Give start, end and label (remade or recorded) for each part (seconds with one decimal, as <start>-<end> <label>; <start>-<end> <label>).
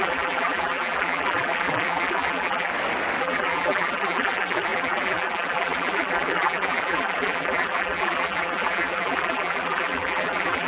0.0-2.7 remade; 2.7-3.2 recorded; 3.2-10.7 remade